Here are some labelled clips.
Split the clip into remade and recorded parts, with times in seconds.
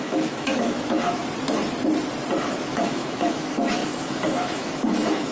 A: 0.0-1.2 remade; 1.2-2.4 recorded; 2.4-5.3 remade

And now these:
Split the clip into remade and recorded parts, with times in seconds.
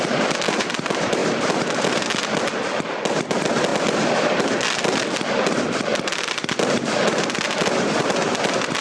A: 0.0-8.8 remade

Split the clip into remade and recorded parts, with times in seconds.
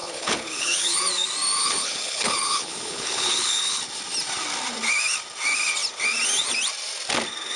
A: 0.0-1.0 remade; 1.0-1.6 recorded; 1.6-3.8 remade; 3.8-7.6 recorded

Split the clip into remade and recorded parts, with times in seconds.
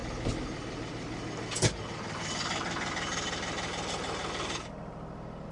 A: 0.0-5.5 recorded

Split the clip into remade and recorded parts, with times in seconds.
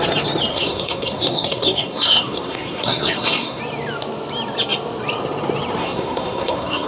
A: 0.0-0.5 recorded; 0.5-3.6 remade; 3.6-5.8 recorded; 5.8-6.9 remade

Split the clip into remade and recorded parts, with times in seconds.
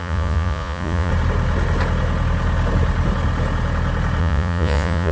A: 0.0-1.1 remade; 1.1-4.2 recorded; 4.2-5.1 remade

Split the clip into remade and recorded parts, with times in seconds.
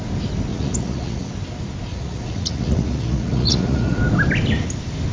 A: 0.0-0.5 recorded; 0.5-1.3 remade; 1.3-1.9 recorded; 1.9-4.0 remade; 4.0-5.1 recorded